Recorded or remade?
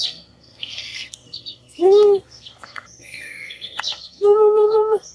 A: remade